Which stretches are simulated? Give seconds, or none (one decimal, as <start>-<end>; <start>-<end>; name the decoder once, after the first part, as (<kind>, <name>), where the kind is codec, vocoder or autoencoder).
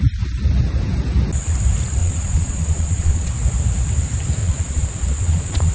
2.0-3.3 (vocoder, Vocos); 4.4-5.7